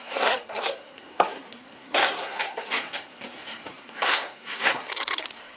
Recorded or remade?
remade